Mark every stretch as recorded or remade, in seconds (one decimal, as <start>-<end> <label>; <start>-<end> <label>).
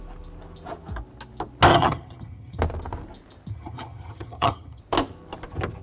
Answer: 0.0-1.7 recorded; 1.7-2.6 remade; 2.6-3.5 recorded; 3.5-4.8 remade; 4.8-5.8 recorded